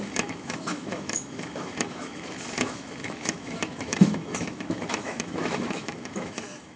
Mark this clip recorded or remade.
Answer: remade